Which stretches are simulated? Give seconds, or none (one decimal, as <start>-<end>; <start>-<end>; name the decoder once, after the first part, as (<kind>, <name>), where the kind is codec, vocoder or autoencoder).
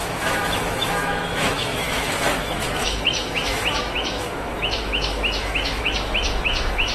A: 0.0-6.9 (autoencoder, DAC-VAE)